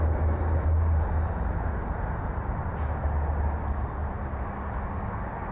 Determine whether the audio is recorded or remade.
recorded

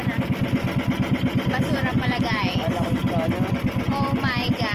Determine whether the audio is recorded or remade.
recorded